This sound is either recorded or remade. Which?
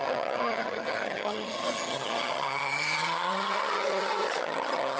remade